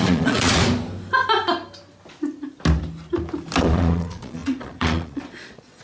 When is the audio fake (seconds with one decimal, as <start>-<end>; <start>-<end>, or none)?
0.0-0.6; 3.6-5.8